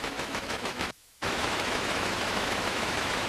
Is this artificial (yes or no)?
yes